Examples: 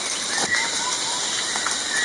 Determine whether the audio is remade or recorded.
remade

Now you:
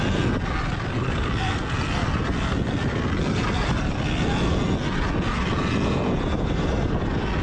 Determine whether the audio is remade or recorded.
recorded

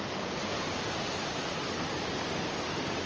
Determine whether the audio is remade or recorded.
recorded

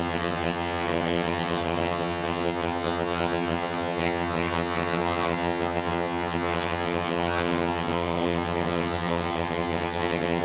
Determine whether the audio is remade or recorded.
remade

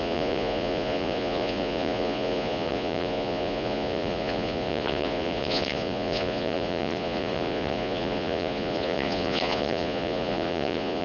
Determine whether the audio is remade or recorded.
remade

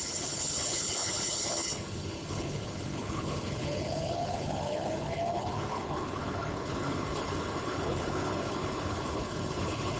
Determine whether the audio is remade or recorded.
remade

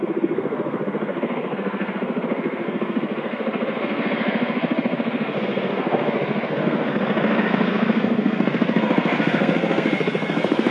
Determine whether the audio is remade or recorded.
remade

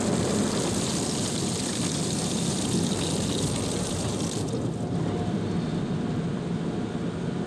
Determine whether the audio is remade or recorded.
recorded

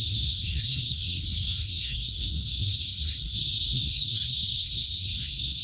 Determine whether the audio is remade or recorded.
remade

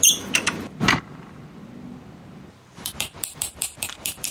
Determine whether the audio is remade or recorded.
remade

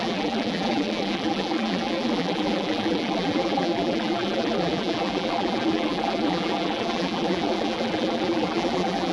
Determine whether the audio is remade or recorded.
remade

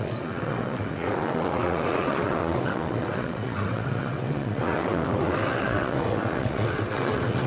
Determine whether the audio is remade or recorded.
remade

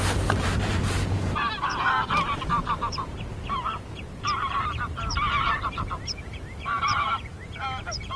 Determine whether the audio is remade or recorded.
remade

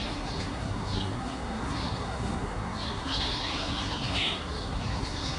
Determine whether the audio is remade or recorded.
remade